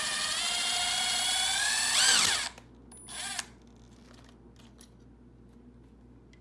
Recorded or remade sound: recorded